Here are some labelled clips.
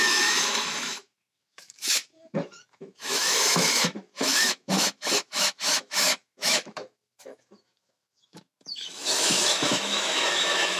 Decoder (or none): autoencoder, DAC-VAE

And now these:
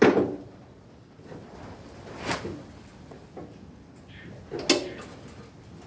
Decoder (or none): none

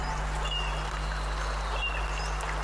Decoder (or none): none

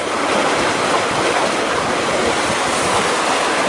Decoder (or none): none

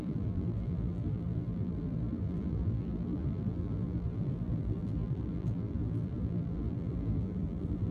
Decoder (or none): vocoder, BigVGAN v2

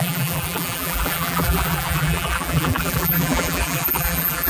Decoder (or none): vocoder, BigVGAN v2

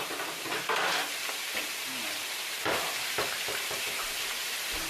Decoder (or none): vocoder, BigVGAN v2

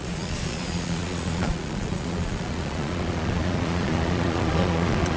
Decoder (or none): vocoder, Vocos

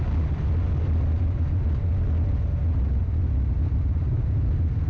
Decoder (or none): none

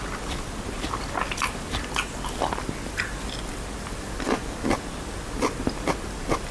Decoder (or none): none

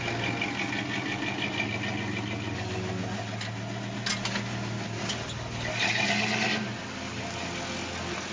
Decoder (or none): none